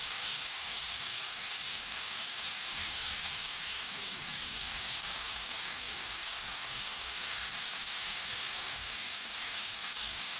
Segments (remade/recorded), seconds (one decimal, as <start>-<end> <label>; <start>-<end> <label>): 0.0-10.4 remade